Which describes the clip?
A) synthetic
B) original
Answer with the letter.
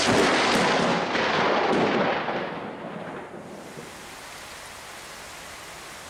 B